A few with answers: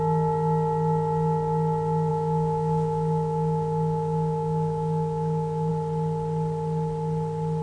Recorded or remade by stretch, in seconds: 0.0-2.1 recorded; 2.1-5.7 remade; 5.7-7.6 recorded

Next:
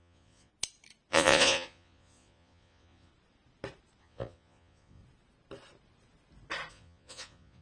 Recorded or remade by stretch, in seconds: 0.0-0.5 remade; 0.5-1.1 recorded; 1.1-3.1 remade; 3.1-4.0 recorded; 4.0-5.0 remade; 5.0-6.7 recorded; 6.7-7.6 remade

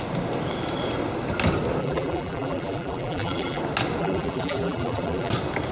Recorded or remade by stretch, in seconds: 0.0-1.8 recorded; 1.8-3.6 remade; 3.6-4.0 recorded; 4.0-5.3 remade; 5.3-5.7 recorded

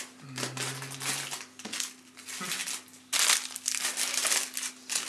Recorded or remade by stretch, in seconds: 0.0-5.1 recorded

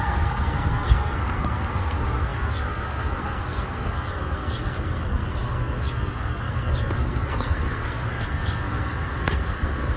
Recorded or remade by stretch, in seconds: 0.0-10.0 remade